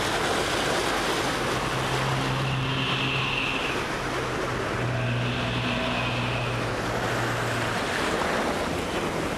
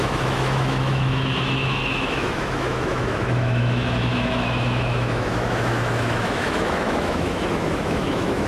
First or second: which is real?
first